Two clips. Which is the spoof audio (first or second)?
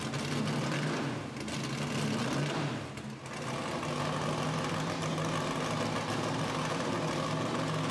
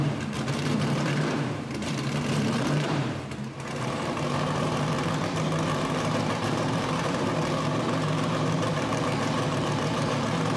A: second